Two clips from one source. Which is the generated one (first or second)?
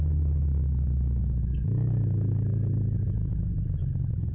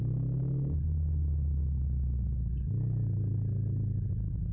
first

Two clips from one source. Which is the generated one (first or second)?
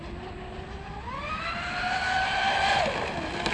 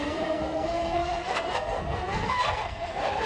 second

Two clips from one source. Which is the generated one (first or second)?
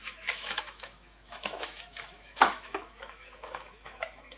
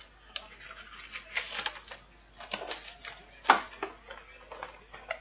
first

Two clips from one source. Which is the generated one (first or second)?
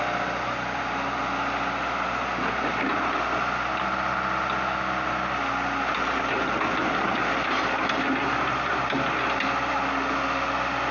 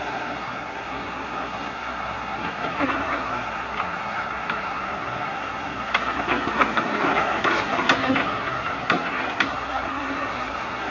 second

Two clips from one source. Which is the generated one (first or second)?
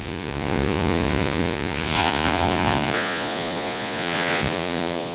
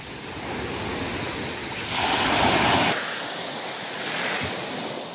first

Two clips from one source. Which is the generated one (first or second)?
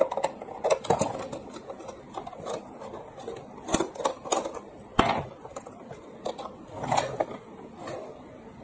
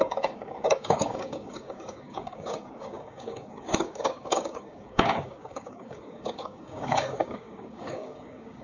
second